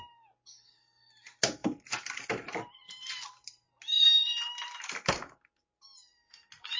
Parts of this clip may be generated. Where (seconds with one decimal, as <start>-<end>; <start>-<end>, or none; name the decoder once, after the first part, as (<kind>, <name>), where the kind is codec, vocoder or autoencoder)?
none